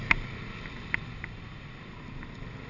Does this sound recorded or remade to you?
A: recorded